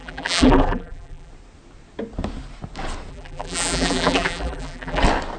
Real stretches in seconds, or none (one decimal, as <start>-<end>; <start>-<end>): 1.3-3.1; 5.0-5.4